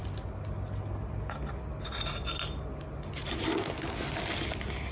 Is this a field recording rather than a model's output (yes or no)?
yes